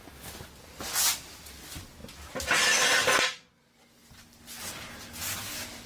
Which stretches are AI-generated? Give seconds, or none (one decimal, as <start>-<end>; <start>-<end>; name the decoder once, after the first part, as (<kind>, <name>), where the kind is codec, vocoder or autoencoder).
none